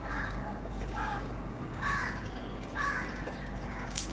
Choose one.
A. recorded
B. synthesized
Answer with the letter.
B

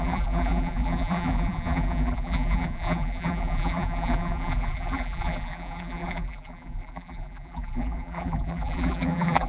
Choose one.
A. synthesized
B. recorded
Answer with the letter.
A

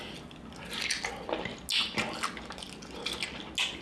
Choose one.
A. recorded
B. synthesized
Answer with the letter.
A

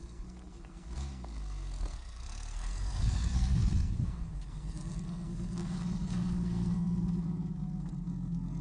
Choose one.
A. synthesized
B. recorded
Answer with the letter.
A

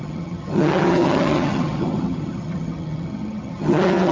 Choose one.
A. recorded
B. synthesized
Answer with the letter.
B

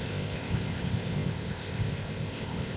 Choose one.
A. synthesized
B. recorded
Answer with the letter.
A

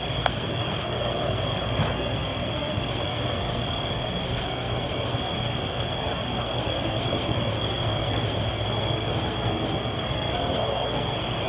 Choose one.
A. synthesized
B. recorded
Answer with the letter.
A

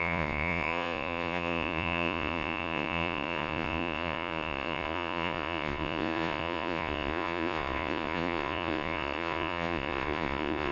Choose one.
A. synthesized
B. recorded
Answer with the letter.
A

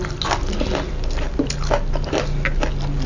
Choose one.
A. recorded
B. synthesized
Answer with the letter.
A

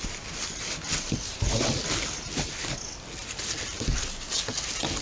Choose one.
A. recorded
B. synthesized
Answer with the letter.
A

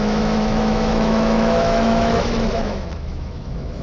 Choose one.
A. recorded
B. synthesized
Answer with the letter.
B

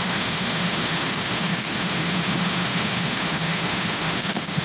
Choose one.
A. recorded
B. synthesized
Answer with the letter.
B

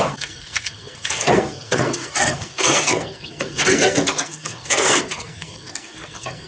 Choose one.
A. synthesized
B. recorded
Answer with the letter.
A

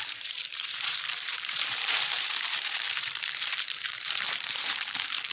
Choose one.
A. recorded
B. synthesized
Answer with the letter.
B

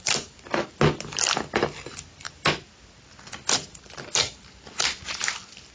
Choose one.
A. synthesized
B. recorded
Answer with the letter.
B